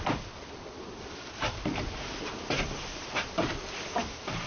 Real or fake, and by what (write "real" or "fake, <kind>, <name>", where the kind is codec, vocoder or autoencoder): real